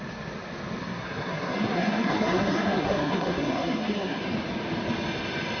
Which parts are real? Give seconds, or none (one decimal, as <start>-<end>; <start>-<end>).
0.0-0.8; 4.2-5.6